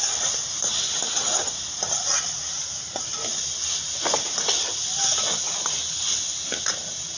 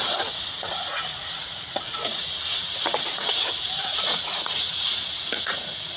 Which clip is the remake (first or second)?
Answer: second